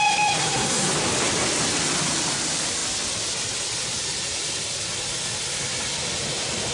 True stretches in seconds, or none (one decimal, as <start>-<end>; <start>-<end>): 0.0-0.4; 0.9-6.7

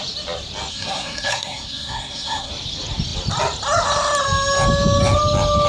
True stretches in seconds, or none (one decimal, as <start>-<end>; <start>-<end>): 0.0-0.7; 2.5-5.7

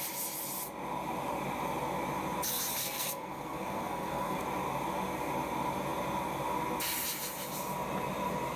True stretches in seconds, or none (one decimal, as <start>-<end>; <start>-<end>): 0.0-2.8; 4.4-8.6

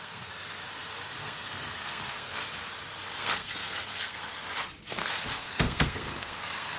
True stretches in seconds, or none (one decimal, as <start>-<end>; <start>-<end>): 0.6-1.2; 2.4-3.1; 4.3-5.4

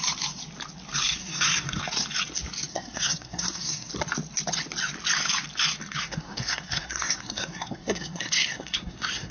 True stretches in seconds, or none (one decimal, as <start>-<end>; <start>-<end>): 0.0-1.2; 1.8-2.7; 3.9-5.8

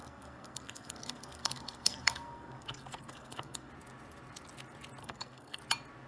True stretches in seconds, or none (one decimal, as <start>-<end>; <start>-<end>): 3.7-5.0; 5.6-6.1

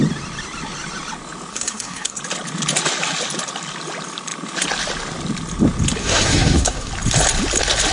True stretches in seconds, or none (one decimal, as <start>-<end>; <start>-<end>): 0.0-1.5; 2.2-6.0; 6.9-7.9

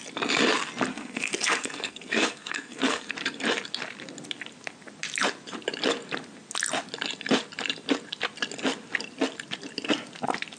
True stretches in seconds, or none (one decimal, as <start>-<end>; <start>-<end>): 0.0-0.9; 3.1-10.6